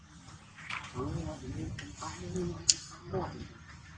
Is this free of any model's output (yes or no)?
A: yes